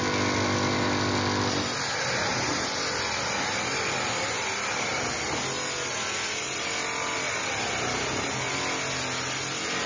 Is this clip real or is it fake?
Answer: real